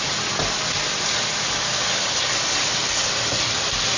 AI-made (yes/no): no